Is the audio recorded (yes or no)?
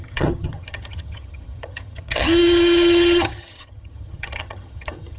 no